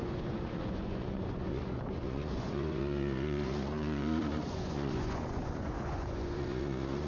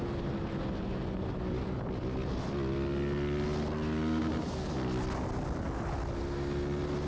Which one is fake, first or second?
first